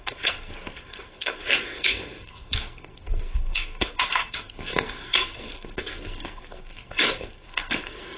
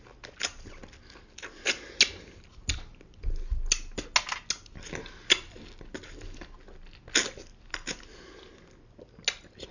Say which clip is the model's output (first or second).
first